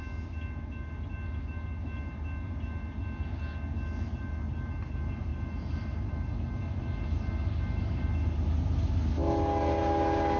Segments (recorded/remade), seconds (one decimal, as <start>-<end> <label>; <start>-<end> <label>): 0.0-10.4 recorded